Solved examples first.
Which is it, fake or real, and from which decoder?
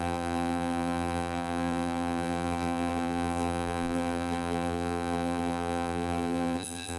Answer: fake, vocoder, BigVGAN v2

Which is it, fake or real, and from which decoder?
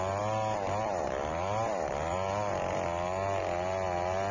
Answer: fake, vocoder, BigVGAN v2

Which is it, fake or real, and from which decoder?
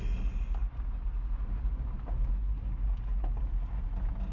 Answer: real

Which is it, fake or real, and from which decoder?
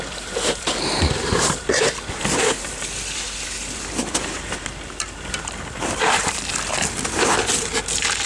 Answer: fake, vocoder, BigVGAN v2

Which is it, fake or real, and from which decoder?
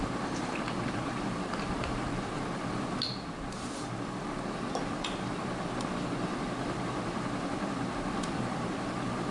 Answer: fake, vocoder, BigVGAN v2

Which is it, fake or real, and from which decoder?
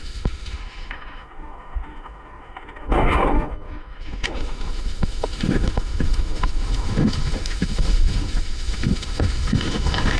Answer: fake, autoencoder, DAC-VAE